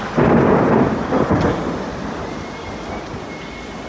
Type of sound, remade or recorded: recorded